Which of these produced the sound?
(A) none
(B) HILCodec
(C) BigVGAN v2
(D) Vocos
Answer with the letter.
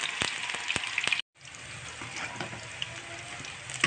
A